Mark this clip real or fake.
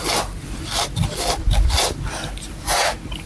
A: real